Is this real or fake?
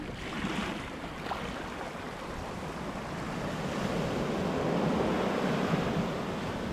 real